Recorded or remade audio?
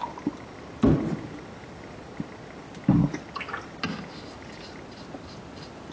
recorded